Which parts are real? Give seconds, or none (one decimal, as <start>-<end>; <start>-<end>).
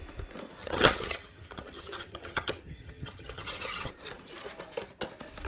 0.0-0.6; 3.9-5.5